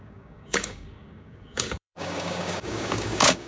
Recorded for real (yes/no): no